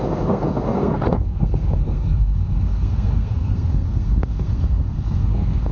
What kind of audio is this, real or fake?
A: fake